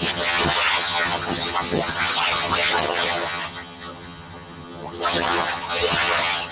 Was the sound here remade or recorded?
remade